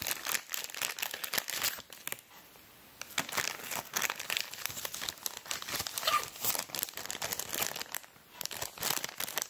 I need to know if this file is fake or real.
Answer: real